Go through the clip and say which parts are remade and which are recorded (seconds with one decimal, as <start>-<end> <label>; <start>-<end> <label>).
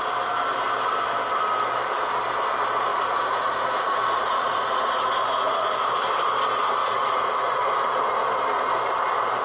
0.0-2.9 recorded; 2.9-6.1 remade; 6.1-6.8 recorded; 6.8-7.6 remade; 7.6-9.4 recorded